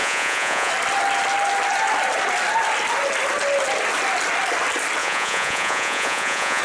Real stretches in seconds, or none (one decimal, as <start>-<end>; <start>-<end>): 0.7-5.0